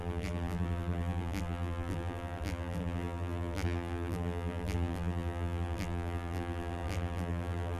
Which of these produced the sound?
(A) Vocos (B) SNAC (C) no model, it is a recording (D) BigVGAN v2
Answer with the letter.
D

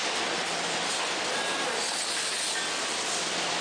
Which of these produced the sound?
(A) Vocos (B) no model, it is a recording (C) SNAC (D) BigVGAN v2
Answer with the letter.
B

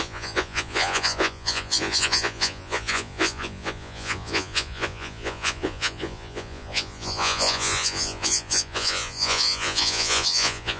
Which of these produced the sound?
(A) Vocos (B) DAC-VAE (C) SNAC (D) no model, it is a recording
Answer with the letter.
A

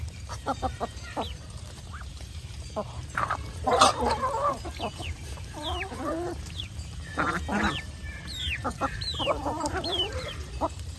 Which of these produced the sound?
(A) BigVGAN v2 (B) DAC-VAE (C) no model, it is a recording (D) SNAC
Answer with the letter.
A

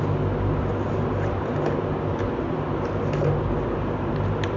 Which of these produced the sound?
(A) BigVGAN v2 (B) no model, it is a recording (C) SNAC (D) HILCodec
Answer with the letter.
B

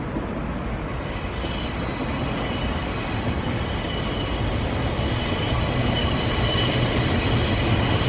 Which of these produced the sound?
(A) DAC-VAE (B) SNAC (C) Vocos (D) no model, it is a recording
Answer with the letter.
D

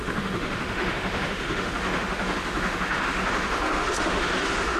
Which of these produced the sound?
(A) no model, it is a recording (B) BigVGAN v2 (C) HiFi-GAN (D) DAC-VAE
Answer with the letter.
D